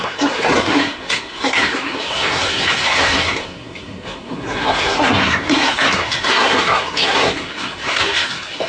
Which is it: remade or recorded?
remade